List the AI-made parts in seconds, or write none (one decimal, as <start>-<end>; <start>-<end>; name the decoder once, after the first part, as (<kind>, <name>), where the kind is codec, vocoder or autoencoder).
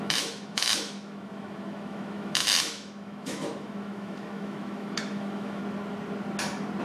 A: 0.0-5.6 (autoencoder, DAC-VAE)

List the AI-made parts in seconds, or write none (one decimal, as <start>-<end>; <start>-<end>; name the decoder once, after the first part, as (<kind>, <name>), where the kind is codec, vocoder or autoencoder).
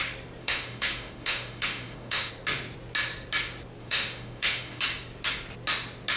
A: 0.4-2.3 (autoencoder, DAC-VAE); 3.8-4.8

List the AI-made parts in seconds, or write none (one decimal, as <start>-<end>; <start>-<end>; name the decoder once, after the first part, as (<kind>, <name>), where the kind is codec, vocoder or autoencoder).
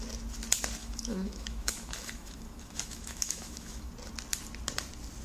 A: 0.8-3.9 (autoencoder, DAC-VAE)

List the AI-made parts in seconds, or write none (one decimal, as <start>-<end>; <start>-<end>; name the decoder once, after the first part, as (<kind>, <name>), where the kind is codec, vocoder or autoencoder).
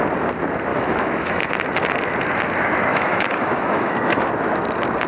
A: 0.7-1.5 (autoencoder, DAC-VAE); 2.9-4.3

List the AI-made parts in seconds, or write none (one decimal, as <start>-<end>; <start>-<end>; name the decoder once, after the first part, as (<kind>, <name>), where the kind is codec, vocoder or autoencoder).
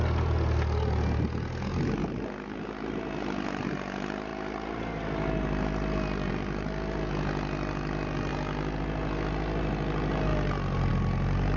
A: none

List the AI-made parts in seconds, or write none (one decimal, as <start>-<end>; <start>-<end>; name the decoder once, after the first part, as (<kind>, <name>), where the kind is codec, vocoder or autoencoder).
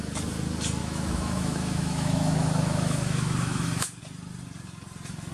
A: 0.8-4.0 (autoencoder, DAC-VAE)